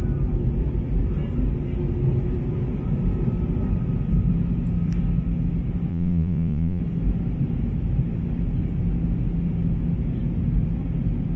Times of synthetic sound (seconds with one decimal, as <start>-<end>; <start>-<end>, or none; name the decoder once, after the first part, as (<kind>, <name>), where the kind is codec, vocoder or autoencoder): 5.9-6.8 (vocoder, Vocos)